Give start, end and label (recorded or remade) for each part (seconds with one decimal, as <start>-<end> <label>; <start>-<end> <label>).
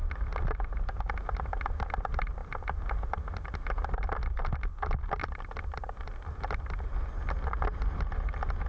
0.0-5.2 recorded; 5.2-7.9 remade; 7.9-8.7 recorded